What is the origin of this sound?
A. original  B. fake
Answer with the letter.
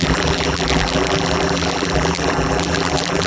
B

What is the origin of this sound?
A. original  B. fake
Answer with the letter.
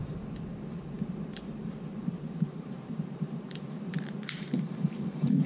B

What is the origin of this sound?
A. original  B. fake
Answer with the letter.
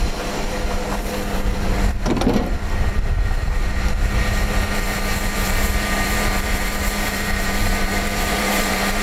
B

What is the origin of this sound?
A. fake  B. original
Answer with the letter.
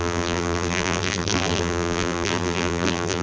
A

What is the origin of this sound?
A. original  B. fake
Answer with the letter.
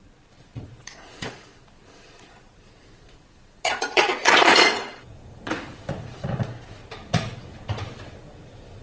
B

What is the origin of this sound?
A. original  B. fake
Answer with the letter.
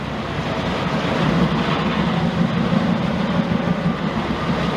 A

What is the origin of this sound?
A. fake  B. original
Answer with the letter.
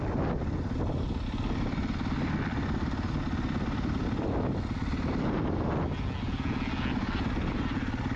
B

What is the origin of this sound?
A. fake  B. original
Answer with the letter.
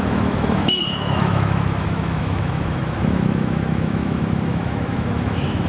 A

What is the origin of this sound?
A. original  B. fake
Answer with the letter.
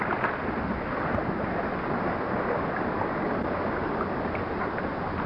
A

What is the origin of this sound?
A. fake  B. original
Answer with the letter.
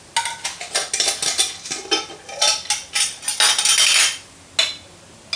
B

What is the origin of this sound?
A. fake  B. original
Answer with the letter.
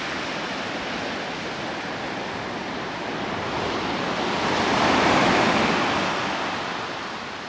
B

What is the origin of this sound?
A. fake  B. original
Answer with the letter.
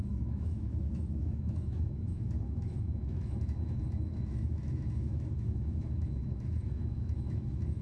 A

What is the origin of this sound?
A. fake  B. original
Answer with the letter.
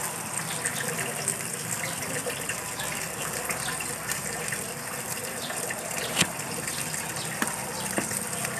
B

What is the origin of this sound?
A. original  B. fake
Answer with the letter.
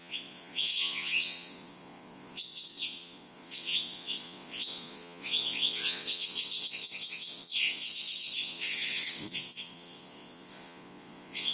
B